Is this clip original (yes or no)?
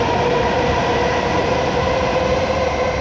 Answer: yes